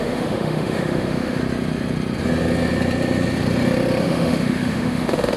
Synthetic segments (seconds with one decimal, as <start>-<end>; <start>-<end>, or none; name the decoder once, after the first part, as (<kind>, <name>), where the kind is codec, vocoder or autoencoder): 0.0-1.4 (autoencoder, DAC-VAE); 4.0-5.4